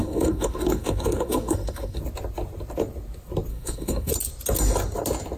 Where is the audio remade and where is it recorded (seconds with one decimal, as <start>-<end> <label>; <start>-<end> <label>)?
0.0-2.0 remade; 2.0-3.5 recorded; 3.5-4.1 remade; 4.1-5.4 recorded